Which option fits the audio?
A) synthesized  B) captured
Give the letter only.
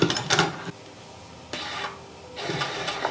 B